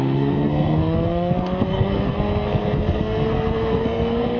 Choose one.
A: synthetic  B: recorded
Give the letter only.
A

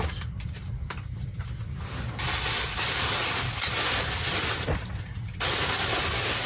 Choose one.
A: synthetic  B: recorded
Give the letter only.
B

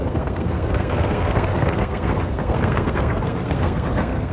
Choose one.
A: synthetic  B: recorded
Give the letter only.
A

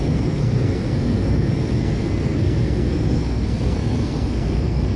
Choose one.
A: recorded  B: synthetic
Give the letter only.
B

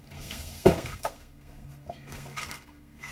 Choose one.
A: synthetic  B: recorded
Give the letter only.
A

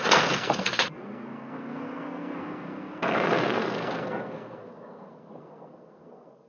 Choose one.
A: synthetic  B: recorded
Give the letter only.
A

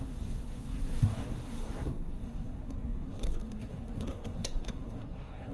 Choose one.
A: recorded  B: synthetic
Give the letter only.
B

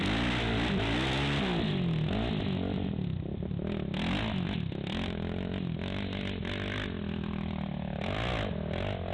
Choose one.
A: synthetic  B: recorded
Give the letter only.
B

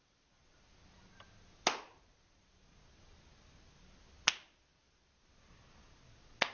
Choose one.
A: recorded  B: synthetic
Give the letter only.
A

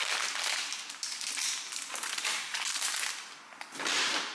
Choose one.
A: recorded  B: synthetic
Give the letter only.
A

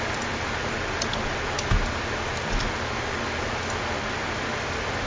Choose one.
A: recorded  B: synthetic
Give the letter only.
A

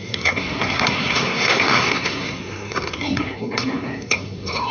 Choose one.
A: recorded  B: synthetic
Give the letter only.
B